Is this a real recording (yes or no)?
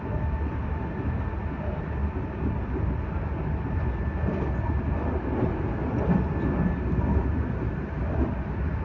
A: yes